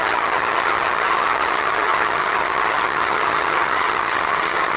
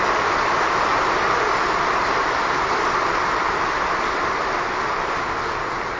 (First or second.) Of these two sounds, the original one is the second